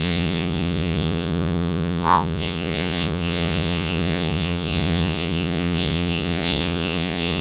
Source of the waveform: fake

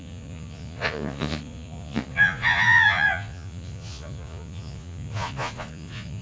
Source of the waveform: fake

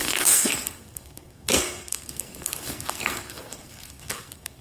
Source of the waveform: fake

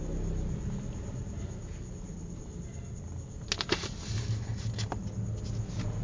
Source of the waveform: real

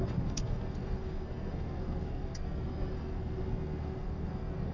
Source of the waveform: fake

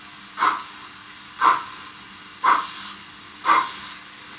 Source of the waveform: real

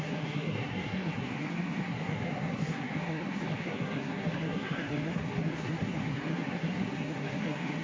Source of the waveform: fake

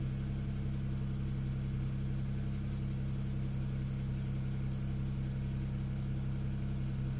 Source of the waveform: real